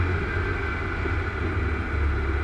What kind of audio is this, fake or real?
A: real